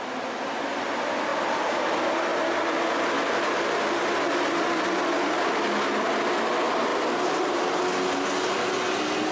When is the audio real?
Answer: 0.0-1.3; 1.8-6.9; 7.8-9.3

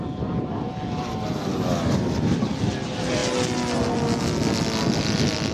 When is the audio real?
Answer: 0.0-5.5

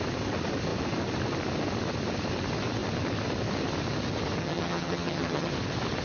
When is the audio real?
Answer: 0.0-4.4; 5.5-6.0